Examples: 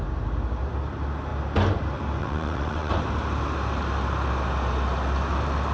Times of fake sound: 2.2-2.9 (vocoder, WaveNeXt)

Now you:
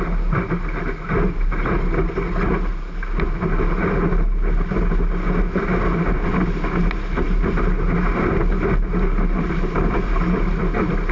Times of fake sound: none

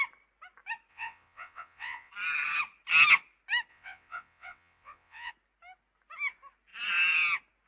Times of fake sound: 0.9-2.1 (vocoder, WaveNeXt); 3.7-5.3

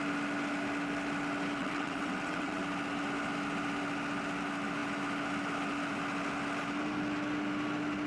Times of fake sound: 1.6-2.6 (vocoder, WaveNeXt)

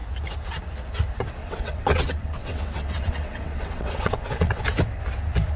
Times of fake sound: 1.4-4.6 (vocoder, WaveNeXt)

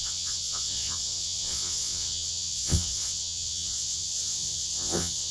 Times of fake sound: 0.0-5.3 (vocoder, WaveNeXt)

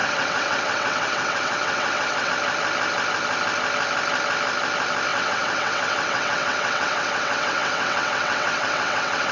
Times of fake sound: 0.0-2.3 (vocoder, WaveNeXt); 5.1-9.3